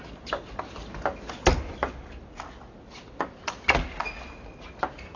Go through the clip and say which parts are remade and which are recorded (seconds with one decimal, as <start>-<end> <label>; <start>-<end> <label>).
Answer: 0.0-5.2 recorded